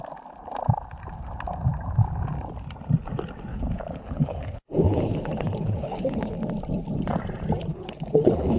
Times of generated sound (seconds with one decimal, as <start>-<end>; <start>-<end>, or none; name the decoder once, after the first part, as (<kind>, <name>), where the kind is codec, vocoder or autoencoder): 3.5-6.3 (codec, HILCodec); 7.7-8.6